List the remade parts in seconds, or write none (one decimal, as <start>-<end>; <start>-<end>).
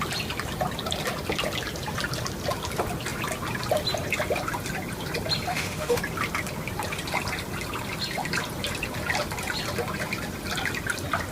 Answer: 5.5-6.0